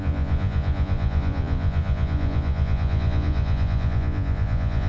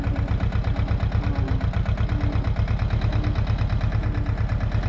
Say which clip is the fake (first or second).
first